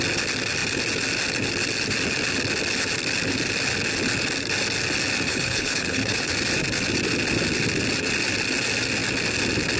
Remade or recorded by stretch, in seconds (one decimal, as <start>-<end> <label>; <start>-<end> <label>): 0.0-5.3 recorded; 5.3-6.3 remade; 6.3-9.8 recorded